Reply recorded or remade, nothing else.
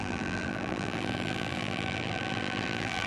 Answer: remade